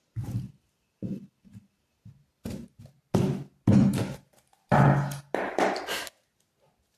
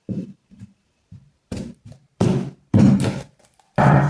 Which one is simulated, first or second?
second